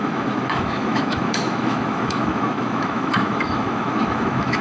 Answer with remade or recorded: remade